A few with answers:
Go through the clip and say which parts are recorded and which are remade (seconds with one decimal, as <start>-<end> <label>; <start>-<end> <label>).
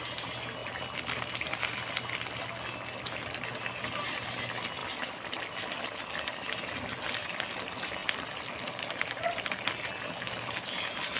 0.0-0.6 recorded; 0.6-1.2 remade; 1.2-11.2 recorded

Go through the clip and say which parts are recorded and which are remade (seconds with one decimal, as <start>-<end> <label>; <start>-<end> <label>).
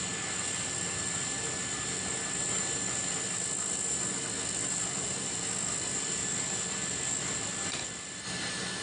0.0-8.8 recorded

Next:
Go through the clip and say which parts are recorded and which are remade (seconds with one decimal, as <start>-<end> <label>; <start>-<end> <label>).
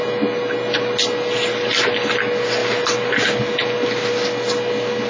0.0-5.1 recorded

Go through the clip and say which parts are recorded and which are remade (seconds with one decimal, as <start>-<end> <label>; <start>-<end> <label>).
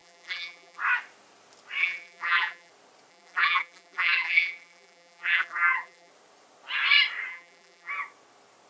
0.0-0.8 remade; 0.8-1.8 recorded; 1.8-2.7 remade; 2.7-3.1 recorded; 3.1-6.1 remade; 6.1-7.3 recorded; 7.3-7.9 remade; 7.9-8.7 recorded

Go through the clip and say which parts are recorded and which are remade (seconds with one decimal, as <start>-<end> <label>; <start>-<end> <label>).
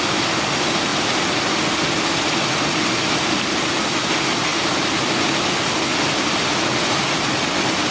0.0-7.9 recorded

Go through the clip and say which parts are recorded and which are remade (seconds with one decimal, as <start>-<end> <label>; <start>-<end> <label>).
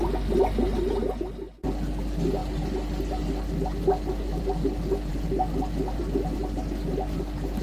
0.0-7.6 recorded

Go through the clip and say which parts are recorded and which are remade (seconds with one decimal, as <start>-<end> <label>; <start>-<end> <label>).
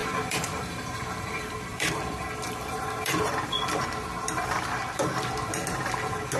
0.0-3.8 remade; 3.8-6.4 recorded